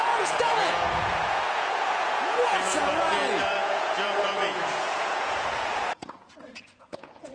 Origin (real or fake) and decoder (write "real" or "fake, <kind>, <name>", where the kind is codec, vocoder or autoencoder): fake, vocoder, Vocos